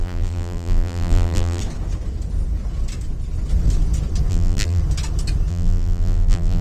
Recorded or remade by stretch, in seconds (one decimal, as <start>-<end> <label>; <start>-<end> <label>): 0.0-1.6 remade; 1.6-4.3 recorded; 4.3-4.8 remade; 4.8-5.5 recorded; 5.5-6.6 remade